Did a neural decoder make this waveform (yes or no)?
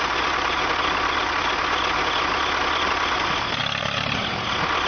no